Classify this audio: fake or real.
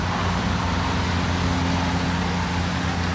real